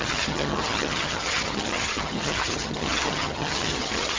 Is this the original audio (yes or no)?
no